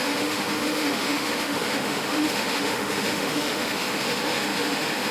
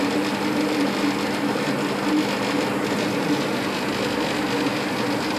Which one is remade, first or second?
first